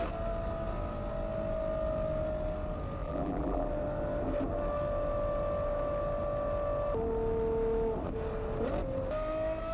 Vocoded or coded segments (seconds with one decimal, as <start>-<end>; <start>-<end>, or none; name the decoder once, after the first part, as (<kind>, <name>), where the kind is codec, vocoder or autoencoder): 3.0-3.7 (vocoder, BigVGAN v2)